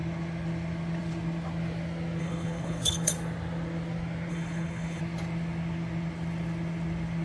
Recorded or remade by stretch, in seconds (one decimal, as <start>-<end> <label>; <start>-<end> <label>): 0.0-2.2 recorded; 2.2-3.1 remade; 3.1-4.3 recorded; 4.3-5.0 remade; 5.0-7.2 recorded